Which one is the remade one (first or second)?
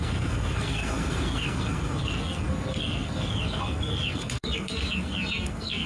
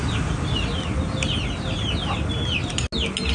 first